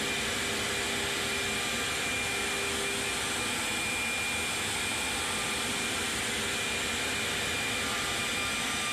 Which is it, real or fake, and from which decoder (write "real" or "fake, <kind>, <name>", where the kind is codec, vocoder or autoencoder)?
real